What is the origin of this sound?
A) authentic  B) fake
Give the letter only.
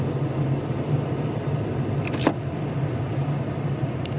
A